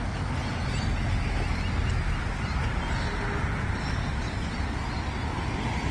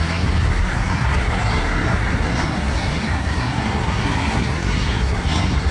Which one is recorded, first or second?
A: first